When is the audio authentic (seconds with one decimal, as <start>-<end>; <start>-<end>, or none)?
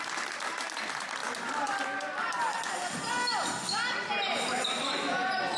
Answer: 0.0-5.6